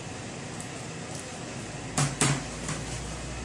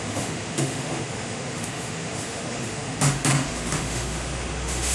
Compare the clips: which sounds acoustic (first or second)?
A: first